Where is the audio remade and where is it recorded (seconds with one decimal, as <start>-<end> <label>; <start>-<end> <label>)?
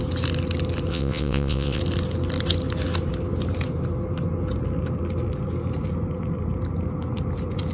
0.0-0.9 recorded; 0.9-1.8 remade; 1.8-7.7 recorded